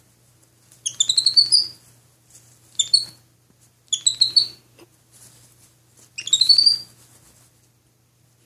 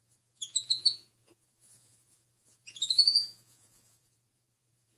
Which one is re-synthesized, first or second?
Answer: second